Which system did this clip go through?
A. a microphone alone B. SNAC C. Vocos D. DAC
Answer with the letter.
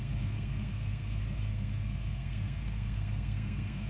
B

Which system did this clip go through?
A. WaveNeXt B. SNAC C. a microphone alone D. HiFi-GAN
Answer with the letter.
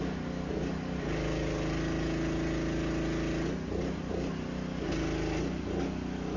C